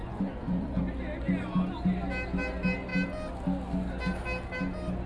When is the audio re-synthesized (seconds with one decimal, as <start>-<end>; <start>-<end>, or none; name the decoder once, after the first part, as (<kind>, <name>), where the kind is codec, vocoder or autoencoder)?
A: 0.0-0.8 (vocoder, Vocos)